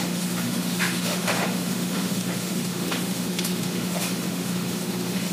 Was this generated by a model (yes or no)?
yes